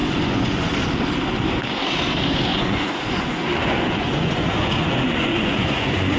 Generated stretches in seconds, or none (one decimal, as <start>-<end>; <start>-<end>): 0.0-0.8; 2.5-6.2